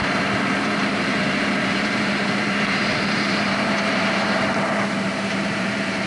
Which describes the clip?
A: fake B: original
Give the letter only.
A